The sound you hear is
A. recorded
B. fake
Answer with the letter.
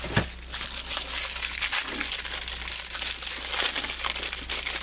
A